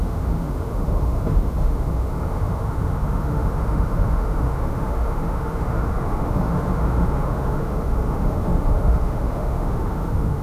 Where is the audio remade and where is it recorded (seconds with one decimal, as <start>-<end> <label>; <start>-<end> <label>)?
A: 0.0-10.4 remade